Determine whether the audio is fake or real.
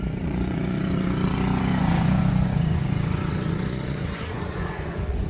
fake